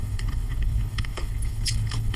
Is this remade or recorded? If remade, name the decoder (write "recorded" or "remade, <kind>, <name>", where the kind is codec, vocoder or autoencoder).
remade, codec, HILCodec